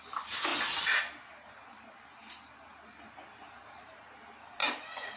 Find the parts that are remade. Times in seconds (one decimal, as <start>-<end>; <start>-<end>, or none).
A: 4.6-5.2